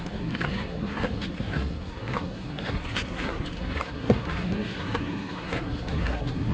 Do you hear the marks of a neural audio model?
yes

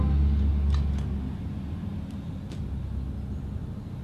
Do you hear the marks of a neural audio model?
no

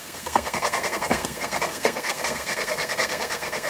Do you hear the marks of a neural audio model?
yes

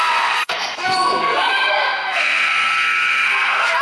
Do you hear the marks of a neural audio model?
yes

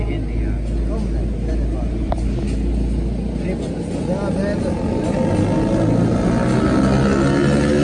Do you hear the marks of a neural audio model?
no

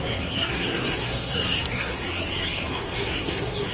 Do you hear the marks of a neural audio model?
yes